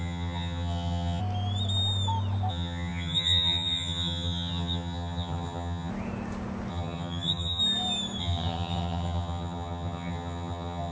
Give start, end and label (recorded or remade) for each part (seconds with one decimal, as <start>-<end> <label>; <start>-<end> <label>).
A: 0.0-1.2 remade; 1.2-2.5 recorded; 2.5-5.9 remade; 5.9-6.7 recorded; 6.7-7.6 remade; 7.6-8.2 recorded; 8.2-10.9 remade